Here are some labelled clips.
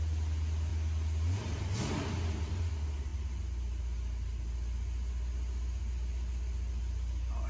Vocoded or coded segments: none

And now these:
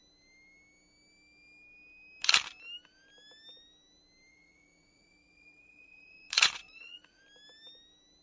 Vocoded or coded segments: 4.3-7.2 (vocoder, Vocos)

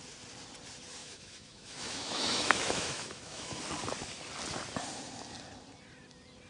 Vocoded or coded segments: 1.0-3.6 (autoencoder, DAC-VAE)

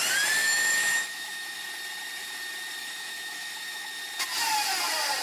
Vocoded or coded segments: 0.4-1.6 (autoencoder, DAC-VAE); 2.8-4.0

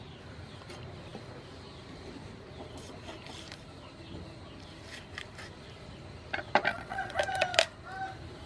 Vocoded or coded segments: 6.7-7.2 (vocoder, WaveNeXt)

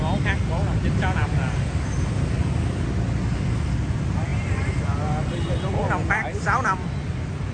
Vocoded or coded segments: 4.3-6.9 (vocoder, BigVGAN v2)

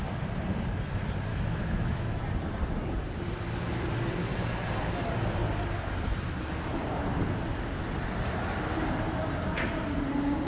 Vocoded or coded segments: 1.3-2.2 (autoencoder, DAC-VAE)

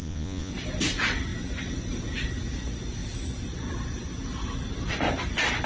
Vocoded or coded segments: 0.0-0.5 (vocoder, Vocos)